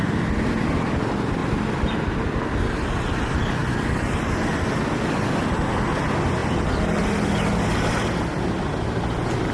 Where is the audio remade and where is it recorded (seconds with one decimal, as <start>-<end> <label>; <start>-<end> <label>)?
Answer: 0.0-9.5 recorded